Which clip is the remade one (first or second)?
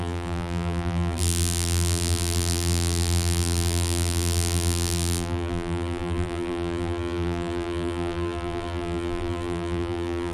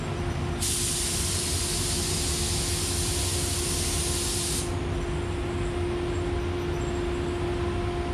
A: first